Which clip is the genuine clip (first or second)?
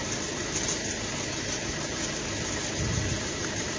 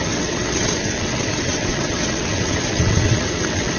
first